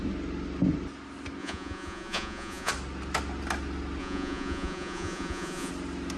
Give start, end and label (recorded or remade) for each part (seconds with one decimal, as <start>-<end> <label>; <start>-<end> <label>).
0.0-1.4 recorded; 1.4-2.7 remade; 2.7-4.0 recorded; 4.0-5.7 remade; 5.7-6.2 recorded